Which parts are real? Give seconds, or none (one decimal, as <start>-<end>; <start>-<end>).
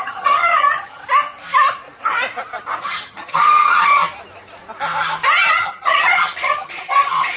1.0-2.8; 4.0-5.5